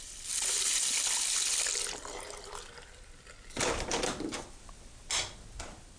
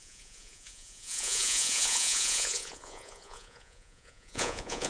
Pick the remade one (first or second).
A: second